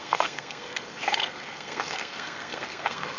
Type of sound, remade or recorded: remade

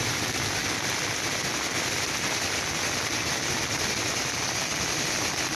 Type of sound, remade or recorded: recorded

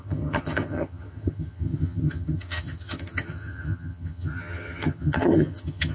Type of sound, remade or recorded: remade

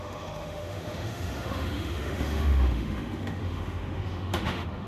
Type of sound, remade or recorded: remade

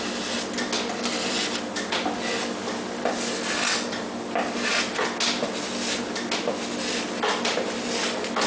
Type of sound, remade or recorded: recorded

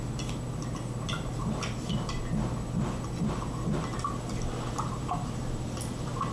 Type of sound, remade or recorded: recorded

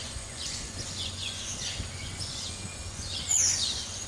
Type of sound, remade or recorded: remade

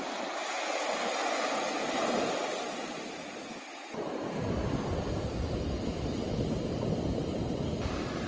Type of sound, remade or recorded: recorded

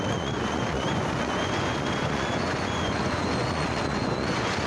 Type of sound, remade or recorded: remade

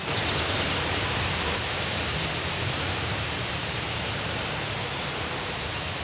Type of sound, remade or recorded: remade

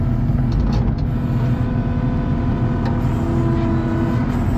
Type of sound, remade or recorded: recorded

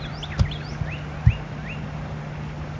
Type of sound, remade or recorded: recorded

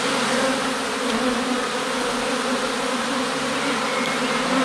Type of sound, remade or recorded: recorded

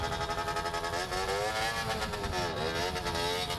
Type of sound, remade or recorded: recorded